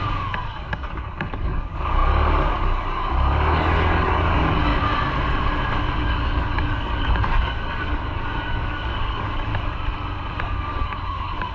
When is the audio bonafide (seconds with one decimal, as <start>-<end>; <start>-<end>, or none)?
4.7-6.0; 9.5-10.4